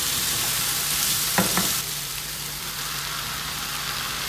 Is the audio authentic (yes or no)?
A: no